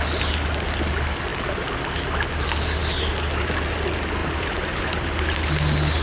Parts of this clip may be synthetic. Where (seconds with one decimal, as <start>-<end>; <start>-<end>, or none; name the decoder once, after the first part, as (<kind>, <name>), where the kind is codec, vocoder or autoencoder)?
4.2-4.8 (vocoder, BigVGAN v2)